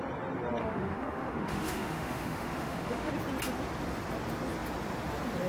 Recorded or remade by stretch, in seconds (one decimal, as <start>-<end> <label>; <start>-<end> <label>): 0.0-0.6 recorded; 0.6-3.1 remade; 3.1-5.5 recorded